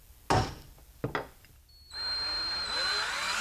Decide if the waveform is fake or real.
real